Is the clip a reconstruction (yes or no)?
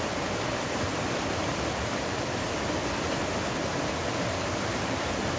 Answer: no